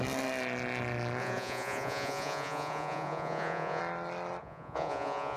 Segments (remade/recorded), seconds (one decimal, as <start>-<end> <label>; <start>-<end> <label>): 0.0-1.2 recorded; 1.2-3.8 remade; 3.8-4.4 recorded; 4.4-5.4 remade

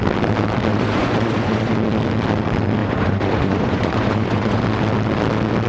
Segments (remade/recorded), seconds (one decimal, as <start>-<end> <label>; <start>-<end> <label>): 0.0-0.7 recorded; 0.7-1.7 remade; 1.7-2.8 recorded; 2.8-4.6 remade; 4.6-5.7 recorded

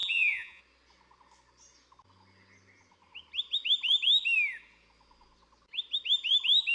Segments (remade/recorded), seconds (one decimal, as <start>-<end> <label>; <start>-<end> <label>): 0.0-0.6 remade; 0.6-6.7 recorded

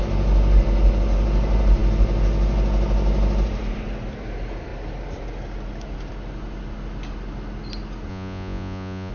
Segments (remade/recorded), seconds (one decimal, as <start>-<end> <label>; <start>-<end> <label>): 0.0-8.1 recorded; 8.1-9.1 remade

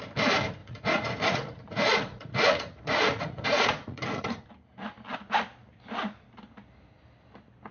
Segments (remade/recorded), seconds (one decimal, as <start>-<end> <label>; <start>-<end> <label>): 0.0-0.6 recorded; 0.6-4.5 remade; 4.5-7.7 recorded